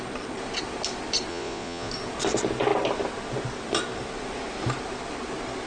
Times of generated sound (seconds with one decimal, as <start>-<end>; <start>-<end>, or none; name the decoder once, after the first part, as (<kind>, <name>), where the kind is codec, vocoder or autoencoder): 1.3-1.9 (vocoder, Vocos)